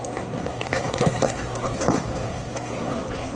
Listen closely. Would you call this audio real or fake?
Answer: fake